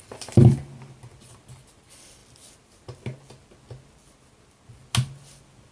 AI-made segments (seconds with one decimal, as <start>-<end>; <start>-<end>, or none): none